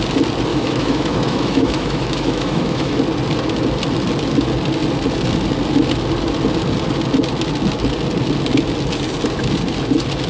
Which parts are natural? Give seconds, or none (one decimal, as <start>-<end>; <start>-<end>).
0.0-0.5; 3.0-10.3